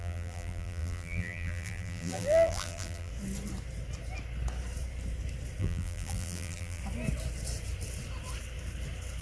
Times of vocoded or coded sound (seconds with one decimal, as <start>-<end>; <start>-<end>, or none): 0.0-3.1; 5.6-6.8